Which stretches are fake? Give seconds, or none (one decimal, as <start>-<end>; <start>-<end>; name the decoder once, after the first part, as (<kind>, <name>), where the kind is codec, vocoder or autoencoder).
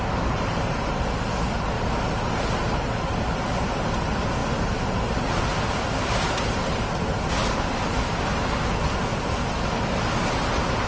none